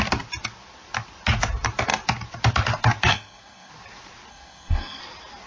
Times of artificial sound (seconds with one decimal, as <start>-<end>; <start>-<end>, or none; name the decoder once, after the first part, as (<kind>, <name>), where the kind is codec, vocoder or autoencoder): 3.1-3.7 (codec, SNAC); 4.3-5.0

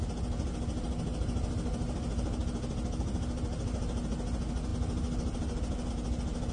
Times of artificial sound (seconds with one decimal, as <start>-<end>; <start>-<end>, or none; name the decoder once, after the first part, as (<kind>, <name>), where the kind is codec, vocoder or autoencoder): none

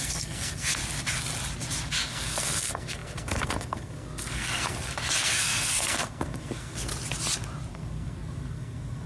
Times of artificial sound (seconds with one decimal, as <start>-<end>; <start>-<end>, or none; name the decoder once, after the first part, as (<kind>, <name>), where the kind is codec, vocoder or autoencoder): 0.0-0.8 (codec, SNAC); 1.9-6.9; 7.7-9.1

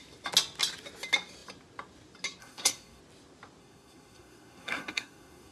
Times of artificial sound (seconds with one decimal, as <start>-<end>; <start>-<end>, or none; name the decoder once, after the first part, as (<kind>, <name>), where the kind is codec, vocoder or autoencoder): 2.4-3.0 (codec, SNAC); 3.6-5.5